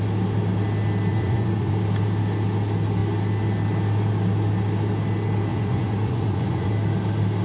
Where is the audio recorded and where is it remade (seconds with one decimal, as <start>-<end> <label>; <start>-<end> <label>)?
0.0-1.1 recorded; 1.1-1.7 remade; 1.7-5.5 recorded; 5.5-6.7 remade; 6.7-7.4 recorded